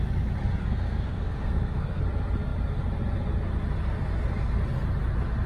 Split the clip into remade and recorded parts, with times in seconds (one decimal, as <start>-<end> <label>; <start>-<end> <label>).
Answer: 0.0-0.6 recorded; 0.6-2.0 remade; 2.0-5.5 recorded